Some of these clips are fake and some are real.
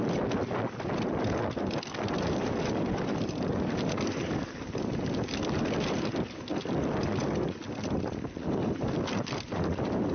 real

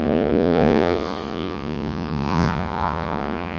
fake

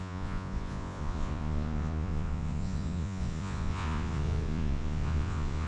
fake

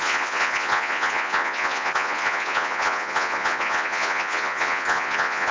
fake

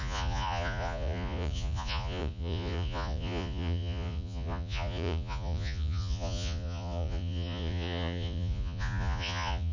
fake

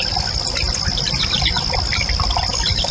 real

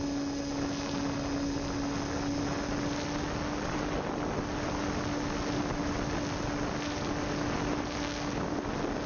real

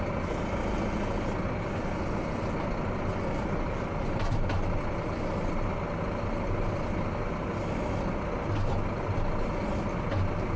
real